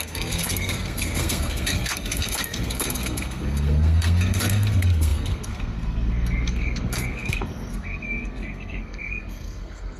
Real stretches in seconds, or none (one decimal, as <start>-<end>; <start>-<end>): none